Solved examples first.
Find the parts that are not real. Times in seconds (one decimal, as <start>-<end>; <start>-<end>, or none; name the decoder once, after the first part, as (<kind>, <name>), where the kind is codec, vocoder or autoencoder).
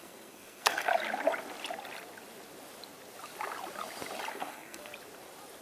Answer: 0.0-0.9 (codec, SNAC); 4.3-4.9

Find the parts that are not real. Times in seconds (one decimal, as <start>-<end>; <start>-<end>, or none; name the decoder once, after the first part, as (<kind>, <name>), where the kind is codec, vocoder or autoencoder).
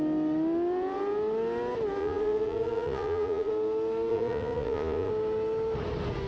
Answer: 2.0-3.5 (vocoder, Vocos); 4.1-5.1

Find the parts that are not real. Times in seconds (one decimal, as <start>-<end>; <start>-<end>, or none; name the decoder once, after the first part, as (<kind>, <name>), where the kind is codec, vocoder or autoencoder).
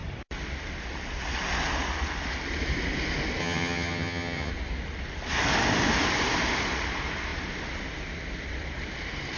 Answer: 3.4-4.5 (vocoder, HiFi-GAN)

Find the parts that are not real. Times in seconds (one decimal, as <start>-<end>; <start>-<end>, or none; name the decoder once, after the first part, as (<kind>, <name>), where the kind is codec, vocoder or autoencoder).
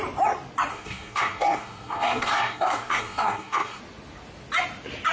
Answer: 0.7-3.8 (codec, SNAC)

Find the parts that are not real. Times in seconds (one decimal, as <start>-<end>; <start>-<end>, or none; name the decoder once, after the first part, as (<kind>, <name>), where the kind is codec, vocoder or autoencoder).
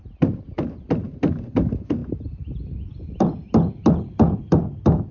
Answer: none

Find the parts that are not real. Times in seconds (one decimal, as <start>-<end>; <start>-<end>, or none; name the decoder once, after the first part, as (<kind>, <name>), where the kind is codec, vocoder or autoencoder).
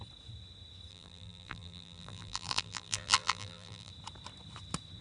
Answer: 0.9-3.9 (vocoder, BigVGAN v2)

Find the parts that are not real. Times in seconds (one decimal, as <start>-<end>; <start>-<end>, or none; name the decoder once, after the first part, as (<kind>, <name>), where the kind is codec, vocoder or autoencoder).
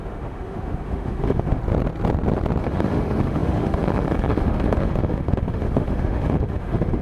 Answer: 0.0-1.6 (autoencoder, DAC-VAE); 2.6-7.0